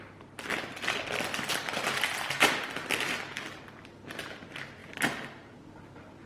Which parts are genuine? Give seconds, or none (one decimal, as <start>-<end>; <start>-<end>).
0.0-6.3